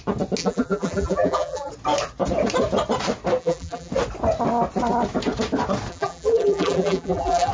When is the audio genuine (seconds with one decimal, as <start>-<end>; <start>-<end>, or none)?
0.0-0.4; 1.7-3.4; 3.9-5.9

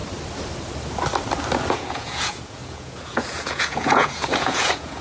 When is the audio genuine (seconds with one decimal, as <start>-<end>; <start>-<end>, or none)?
0.0-1.7